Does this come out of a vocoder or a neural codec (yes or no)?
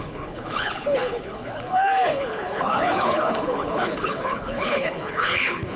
yes